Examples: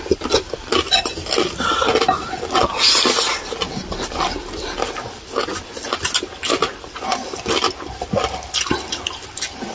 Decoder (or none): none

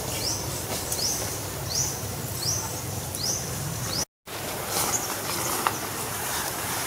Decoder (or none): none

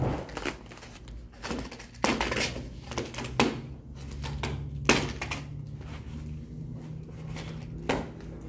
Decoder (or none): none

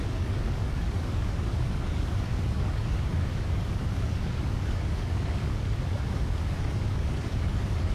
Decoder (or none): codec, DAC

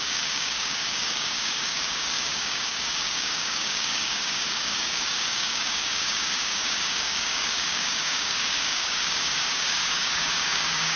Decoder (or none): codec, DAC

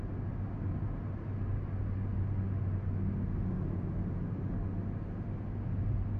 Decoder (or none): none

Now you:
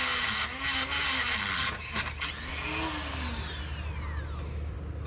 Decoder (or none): none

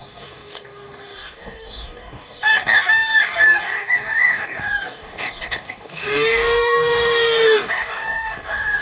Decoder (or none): codec, DAC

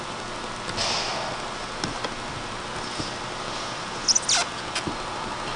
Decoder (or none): none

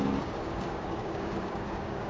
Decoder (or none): codec, DAC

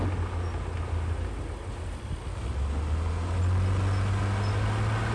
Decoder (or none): none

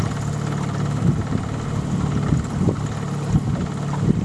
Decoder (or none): none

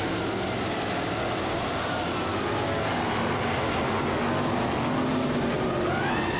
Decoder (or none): none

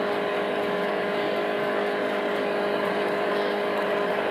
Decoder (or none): codec, DAC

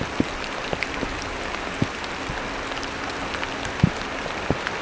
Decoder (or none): none